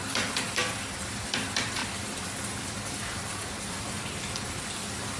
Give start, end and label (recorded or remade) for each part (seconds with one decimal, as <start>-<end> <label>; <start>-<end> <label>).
0.0-5.2 recorded